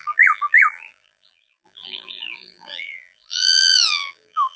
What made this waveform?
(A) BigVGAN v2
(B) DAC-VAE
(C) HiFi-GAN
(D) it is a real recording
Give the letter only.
A